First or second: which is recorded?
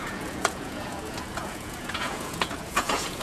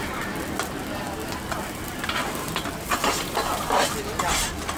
second